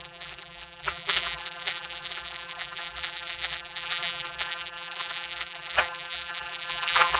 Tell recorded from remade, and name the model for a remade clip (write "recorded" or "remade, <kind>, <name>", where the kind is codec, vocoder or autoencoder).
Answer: remade, vocoder, BigVGAN v2